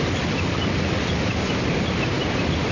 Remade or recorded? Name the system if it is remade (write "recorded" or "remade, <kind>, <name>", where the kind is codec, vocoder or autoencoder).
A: recorded